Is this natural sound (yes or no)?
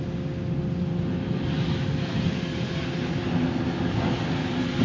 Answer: yes